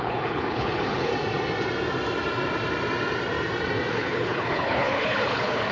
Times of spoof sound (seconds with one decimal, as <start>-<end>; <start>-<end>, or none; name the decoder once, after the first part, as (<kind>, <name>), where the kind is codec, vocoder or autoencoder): 0.0-1.1 (codec, HILCodec); 3.9-5.7